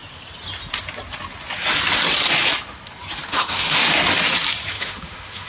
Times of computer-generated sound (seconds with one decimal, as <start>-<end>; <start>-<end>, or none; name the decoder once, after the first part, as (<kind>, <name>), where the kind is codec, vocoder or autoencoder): 3.3-4.0 (autoencoder, DAC-VAE); 4.7-5.5